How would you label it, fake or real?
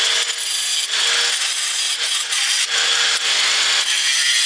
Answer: real